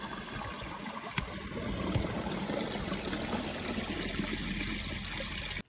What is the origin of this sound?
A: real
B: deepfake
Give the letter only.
A